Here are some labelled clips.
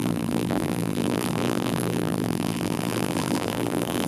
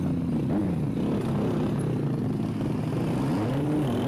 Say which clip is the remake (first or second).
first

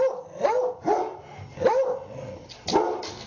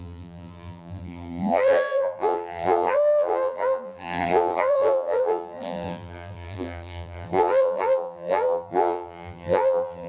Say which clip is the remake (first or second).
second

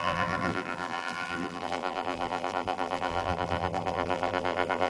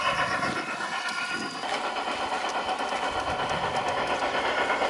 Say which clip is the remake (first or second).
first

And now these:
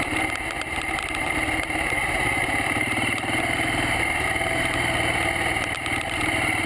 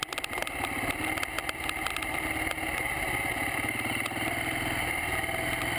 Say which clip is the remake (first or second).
first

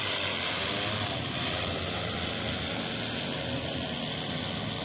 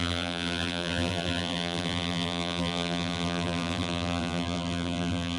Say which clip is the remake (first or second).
second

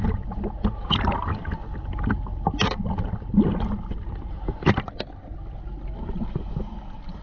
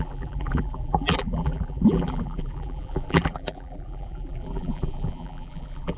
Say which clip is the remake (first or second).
second